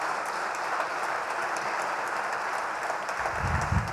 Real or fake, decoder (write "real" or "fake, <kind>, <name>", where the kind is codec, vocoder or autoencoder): real